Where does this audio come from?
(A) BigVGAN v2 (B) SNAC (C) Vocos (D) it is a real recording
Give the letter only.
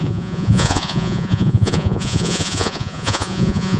C